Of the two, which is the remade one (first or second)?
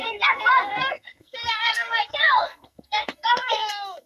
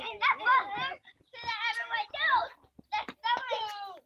first